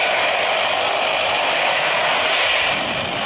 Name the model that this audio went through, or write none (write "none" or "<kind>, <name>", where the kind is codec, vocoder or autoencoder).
none